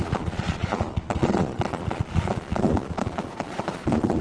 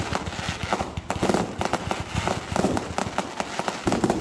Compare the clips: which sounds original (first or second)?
second